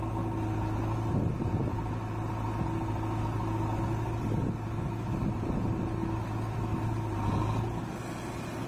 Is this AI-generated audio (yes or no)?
no